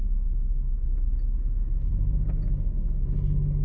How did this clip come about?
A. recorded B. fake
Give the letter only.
A